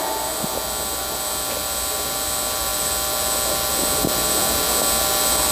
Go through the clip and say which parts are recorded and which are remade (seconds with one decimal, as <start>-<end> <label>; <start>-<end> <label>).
0.0-5.5 recorded